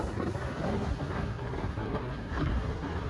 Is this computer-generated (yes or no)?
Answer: yes